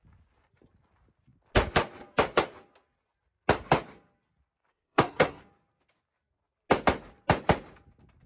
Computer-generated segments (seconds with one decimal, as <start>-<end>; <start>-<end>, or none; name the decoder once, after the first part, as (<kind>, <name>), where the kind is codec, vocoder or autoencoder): 4.7-5.4 (codec, SNAC)

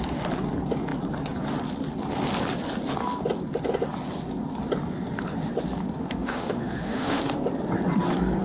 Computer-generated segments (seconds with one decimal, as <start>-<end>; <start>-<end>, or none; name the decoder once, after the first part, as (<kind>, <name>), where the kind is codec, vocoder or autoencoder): 6.0-7.2 (autoencoder, DAC-VAE)

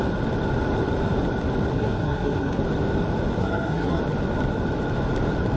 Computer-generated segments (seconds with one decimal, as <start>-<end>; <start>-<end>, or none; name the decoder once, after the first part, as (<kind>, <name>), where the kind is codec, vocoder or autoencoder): 1.7-2.6 (codec, SNAC); 3.4-4.0

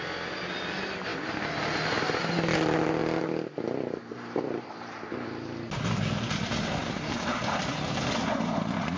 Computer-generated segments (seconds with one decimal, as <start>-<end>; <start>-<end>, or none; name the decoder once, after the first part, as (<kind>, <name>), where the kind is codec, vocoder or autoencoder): 6.8-7.6 (vocoder, BigVGAN v2)

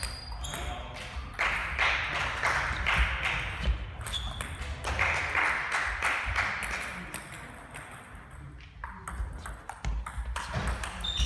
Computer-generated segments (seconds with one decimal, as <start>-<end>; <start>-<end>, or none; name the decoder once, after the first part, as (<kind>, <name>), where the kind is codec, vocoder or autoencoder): none